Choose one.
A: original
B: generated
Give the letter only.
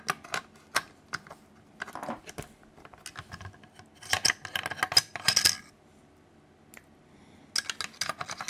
A